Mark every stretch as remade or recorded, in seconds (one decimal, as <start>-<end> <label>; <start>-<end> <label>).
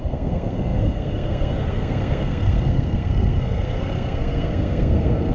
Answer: 0.0-5.3 remade